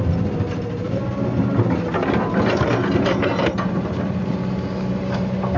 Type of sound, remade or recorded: recorded